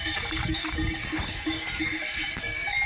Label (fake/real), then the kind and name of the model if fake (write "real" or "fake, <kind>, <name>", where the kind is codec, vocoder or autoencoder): fake, codec, DAC